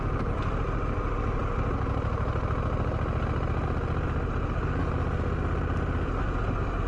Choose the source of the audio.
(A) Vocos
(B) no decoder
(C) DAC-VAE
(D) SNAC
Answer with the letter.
B